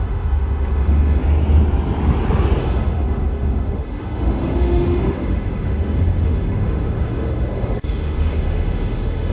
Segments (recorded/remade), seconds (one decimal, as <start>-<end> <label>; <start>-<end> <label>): 0.0-1.2 remade; 1.2-2.6 recorded; 2.6-9.3 remade